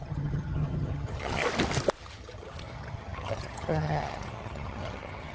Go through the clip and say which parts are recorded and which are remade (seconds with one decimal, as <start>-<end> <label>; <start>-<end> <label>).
0.0-1.4 remade; 1.4-2.0 recorded; 2.0-5.3 remade